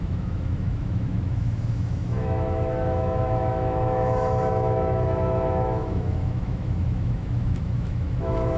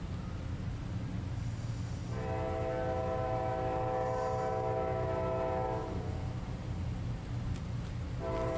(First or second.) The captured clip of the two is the second